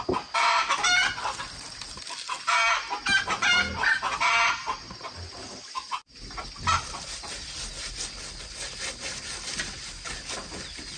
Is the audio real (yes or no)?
yes